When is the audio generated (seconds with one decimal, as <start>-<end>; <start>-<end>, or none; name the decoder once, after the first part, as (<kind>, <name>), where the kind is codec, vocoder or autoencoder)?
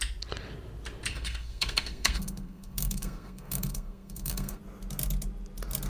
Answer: 1.1-4.6 (codec, SNAC)